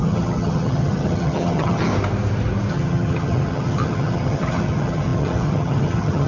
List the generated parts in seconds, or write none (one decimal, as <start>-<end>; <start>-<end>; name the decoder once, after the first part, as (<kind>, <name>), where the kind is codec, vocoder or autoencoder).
0.0-1.9 (vocoder, HiFi-GAN); 2.7-6.3

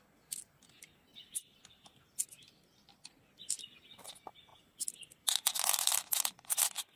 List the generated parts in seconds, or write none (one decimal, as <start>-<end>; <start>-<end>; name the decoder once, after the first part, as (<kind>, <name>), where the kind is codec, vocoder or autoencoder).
none